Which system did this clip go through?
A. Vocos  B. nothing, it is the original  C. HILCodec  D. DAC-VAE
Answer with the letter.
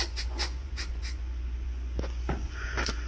A